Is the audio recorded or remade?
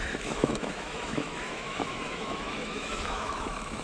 remade